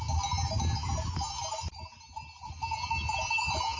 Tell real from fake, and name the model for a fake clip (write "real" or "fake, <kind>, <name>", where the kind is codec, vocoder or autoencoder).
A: real